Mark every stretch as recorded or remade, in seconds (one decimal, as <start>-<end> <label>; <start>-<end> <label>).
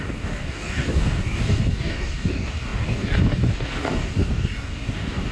0.0-5.3 remade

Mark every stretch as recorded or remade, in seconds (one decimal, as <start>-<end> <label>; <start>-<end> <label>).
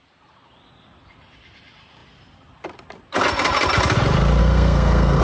0.0-4.4 recorded; 4.4-5.2 remade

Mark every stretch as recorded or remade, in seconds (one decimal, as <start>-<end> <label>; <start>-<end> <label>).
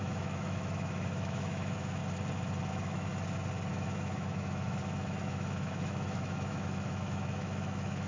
0.0-2.0 remade; 2.0-2.7 recorded; 2.7-3.1 remade; 3.1-3.7 recorded; 3.7-8.1 remade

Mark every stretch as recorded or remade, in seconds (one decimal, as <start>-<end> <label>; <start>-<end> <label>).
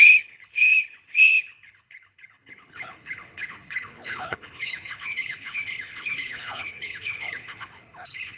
0.0-8.4 remade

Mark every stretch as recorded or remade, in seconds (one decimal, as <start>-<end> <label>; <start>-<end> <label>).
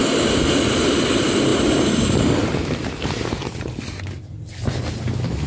0.0-5.5 recorded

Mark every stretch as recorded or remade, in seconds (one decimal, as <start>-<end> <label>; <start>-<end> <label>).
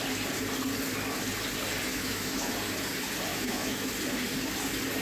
0.0-1.9 recorded; 1.9-2.5 remade; 2.5-3.3 recorded; 3.3-3.9 remade; 3.9-5.0 recorded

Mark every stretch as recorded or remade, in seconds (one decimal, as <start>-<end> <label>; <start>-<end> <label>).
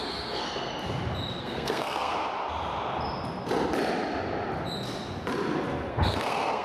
0.0-0.7 remade; 0.7-1.4 recorded; 1.4-2.1 remade; 2.1-5.9 recorded; 5.9-6.6 remade